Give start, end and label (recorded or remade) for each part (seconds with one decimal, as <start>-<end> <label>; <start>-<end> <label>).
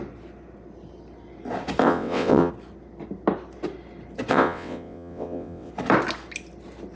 0.0-1.8 recorded; 1.8-2.5 remade; 2.5-4.3 recorded; 4.3-5.7 remade; 5.7-7.0 recorded